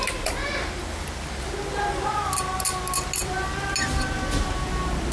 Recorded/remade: recorded